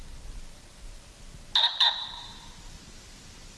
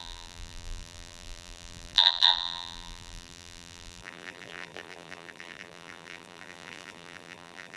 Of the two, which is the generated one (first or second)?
second